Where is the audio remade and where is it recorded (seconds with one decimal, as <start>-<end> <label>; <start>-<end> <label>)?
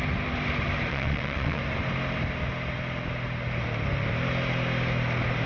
0.0-0.9 recorded; 0.9-1.6 remade; 1.6-5.5 recorded